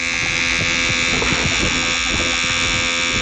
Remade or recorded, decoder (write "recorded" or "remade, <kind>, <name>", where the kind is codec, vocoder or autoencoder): recorded